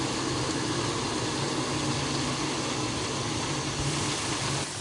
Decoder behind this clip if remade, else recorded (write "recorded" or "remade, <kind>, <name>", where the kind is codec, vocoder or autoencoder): recorded